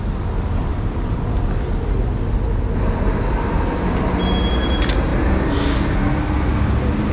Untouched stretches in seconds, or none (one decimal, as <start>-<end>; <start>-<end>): 0.0-7.1